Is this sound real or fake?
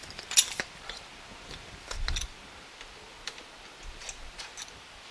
real